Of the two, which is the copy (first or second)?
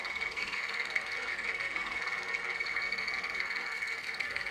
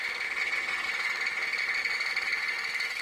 first